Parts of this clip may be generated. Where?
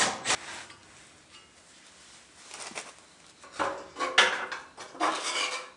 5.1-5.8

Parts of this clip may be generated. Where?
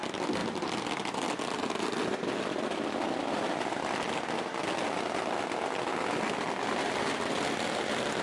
none